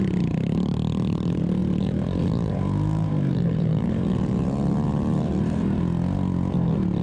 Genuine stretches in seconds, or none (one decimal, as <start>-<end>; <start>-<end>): 0.0-1.6; 5.8-7.0